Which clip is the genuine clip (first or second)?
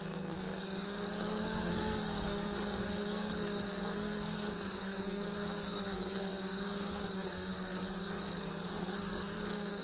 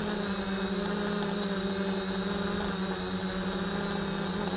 second